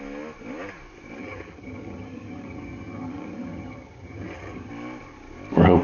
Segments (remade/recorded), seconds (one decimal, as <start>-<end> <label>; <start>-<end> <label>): 0.0-1.2 recorded; 1.2-4.7 remade; 4.7-5.8 recorded